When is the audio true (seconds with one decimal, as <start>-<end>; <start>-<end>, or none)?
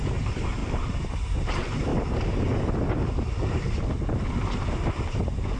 1.9-3.4